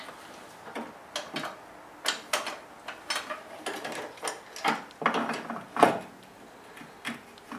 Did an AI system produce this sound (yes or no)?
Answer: no